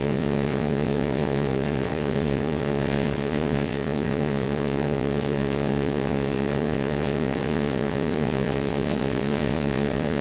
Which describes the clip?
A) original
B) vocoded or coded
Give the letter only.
B